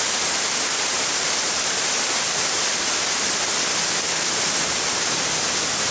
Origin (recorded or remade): remade